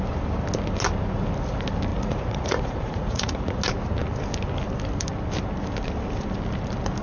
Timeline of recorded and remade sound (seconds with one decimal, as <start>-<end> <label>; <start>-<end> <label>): 0.0-1.9 recorded; 1.9-3.6 remade; 3.6-7.0 recorded